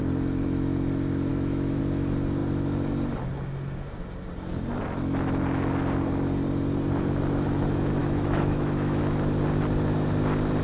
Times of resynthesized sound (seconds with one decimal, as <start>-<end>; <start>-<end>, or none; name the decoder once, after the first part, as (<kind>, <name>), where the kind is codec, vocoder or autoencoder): 1.3-1.8 (autoencoder, DAC-VAE); 8.0-9.0